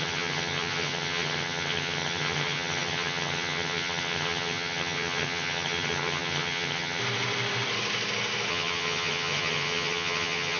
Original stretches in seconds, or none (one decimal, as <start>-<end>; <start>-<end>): 7.0-8.5